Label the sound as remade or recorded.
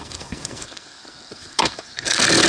remade